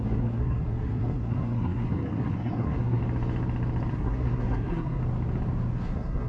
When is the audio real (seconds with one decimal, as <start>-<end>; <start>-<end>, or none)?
3.0-3.9; 5.0-5.8